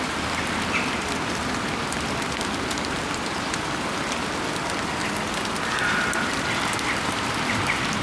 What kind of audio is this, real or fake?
real